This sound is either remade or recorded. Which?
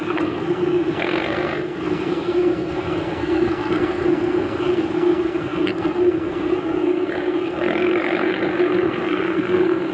remade